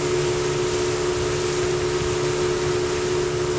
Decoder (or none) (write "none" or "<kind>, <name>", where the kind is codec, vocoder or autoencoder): none